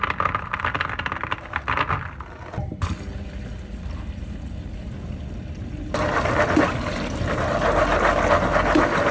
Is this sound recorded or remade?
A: recorded